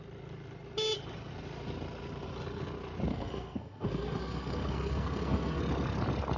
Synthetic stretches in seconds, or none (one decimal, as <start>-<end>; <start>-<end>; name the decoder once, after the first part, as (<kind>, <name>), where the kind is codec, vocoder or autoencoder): 3.1-5.6 (codec, SNAC)